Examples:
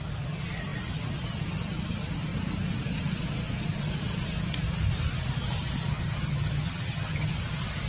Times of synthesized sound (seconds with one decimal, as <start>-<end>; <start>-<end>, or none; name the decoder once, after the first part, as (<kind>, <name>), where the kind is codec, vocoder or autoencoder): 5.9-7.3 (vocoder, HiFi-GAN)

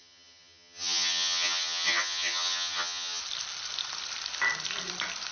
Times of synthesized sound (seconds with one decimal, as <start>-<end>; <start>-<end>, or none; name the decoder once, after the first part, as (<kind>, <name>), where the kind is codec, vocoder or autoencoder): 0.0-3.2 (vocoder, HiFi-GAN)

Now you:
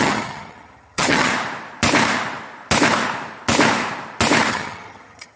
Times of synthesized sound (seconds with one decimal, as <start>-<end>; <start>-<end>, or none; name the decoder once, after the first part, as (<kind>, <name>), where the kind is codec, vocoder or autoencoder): 0.0-1.3 (vocoder, HiFi-GAN); 4.5-5.4

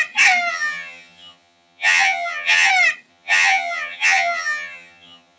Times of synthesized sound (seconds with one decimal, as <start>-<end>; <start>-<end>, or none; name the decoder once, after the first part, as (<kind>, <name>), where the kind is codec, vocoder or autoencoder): 0.5-2.7 (vocoder, HiFi-GAN); 3.1-5.4

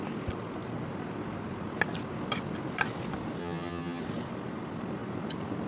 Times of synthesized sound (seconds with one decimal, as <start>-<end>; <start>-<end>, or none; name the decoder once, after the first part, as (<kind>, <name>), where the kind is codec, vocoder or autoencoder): 3.4-4.0 (vocoder, HiFi-GAN)

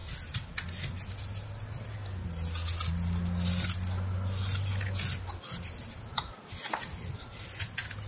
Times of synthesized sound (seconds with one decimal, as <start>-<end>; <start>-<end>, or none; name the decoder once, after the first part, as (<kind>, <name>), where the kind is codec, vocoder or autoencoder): none